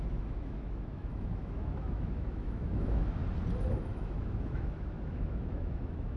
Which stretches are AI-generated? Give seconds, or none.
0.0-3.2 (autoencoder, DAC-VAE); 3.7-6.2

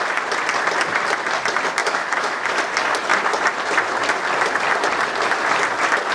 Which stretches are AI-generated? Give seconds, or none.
1.8-2.5 (autoencoder, DAC-VAE)